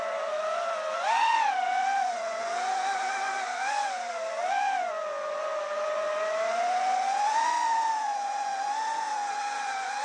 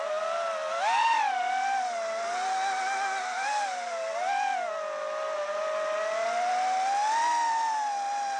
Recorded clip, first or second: second